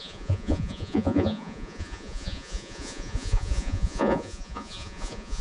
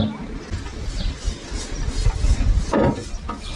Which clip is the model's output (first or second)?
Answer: first